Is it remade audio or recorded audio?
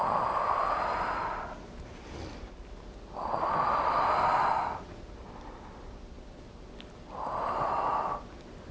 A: recorded